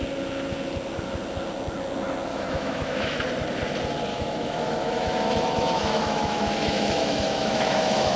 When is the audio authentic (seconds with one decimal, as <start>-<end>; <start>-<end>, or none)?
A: 0.0-2.3; 3.2-4.1